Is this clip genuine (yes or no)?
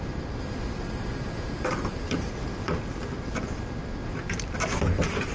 yes